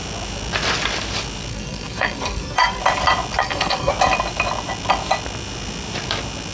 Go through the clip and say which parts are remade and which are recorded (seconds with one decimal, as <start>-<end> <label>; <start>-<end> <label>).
0.0-1.5 recorded; 1.5-2.8 remade; 2.8-3.4 recorded; 3.4-3.9 remade; 3.9-6.5 recorded